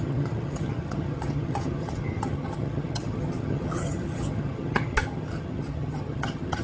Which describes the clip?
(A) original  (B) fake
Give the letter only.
B